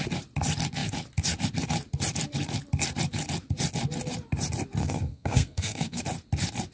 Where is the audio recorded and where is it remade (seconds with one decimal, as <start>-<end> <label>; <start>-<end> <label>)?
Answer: 0.0-4.8 recorded; 4.8-6.0 remade; 6.0-6.7 recorded

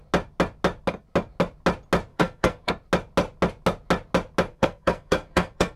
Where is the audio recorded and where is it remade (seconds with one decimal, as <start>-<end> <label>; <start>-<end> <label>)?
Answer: 0.0-2.1 recorded; 2.1-2.7 remade; 2.7-4.5 recorded; 4.5-5.8 remade

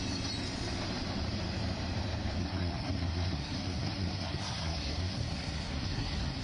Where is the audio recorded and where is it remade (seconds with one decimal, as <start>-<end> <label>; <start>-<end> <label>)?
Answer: 0.0-2.4 recorded; 2.4-6.4 remade